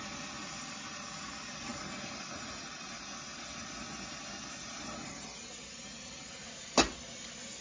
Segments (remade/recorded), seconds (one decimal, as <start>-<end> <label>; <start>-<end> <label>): 0.0-7.6 recorded